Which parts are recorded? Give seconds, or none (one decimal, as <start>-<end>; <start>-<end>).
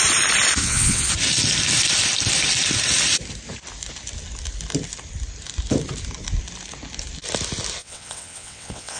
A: 0.0-0.6; 1.1-7.8